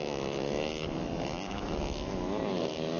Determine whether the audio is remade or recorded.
recorded